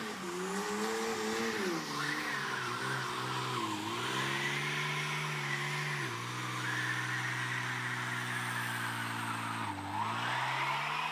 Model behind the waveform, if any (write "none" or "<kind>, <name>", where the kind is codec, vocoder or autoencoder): none